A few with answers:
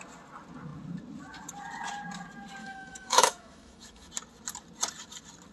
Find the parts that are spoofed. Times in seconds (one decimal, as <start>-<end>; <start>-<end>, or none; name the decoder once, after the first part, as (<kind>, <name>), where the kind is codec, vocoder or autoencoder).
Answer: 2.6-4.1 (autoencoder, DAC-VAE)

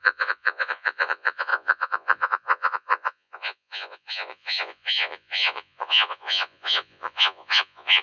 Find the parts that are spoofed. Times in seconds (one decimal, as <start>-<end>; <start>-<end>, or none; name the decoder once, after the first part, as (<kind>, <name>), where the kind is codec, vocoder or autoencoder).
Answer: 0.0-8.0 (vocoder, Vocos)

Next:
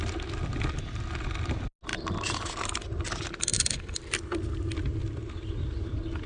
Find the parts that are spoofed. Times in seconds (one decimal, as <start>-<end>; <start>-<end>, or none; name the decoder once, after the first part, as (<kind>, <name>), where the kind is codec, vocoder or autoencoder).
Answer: 3.5-4.0 (vocoder, BigVGAN v2)

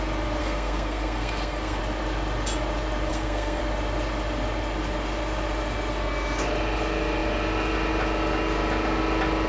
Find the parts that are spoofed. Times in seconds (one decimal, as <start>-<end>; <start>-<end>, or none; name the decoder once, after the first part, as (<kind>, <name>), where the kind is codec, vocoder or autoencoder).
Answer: 0.4-1.8 (codec, SNAC); 3.1-3.6

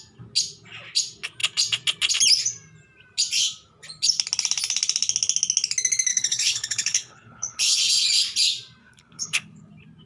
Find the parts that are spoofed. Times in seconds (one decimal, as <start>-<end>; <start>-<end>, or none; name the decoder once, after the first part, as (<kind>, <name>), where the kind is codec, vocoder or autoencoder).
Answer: 6.1-7.8 (codec, HILCodec); 8.8-9.7